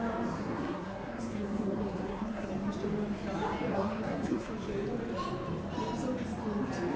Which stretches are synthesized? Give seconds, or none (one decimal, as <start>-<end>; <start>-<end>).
0.4-2.5; 3.7-4.5